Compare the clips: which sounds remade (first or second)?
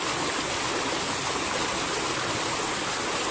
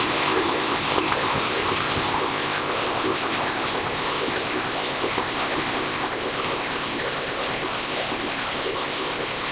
second